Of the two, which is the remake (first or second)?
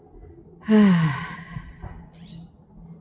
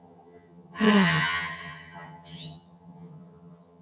second